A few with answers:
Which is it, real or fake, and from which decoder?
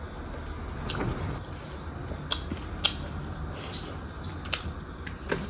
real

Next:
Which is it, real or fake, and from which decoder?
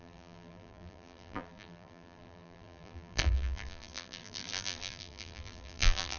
fake, vocoder, BigVGAN v2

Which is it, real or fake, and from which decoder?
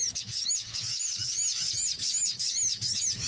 fake, autoencoder, DAC-VAE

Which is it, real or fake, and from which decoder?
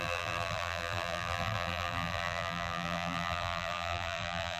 fake, vocoder, BigVGAN v2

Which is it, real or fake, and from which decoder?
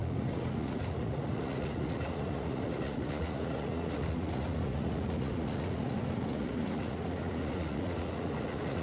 fake, vocoder, Vocos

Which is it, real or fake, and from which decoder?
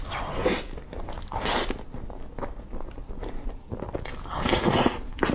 real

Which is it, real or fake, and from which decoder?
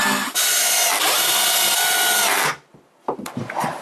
real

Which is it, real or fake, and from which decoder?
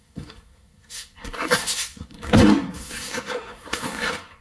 fake, codec, SNAC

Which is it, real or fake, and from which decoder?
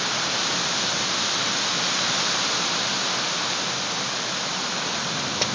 real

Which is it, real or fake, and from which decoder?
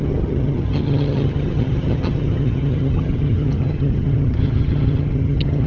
fake, vocoder, HiFi-GAN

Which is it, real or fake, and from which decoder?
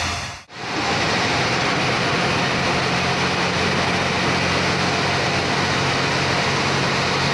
real